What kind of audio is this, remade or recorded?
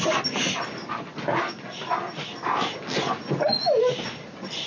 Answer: recorded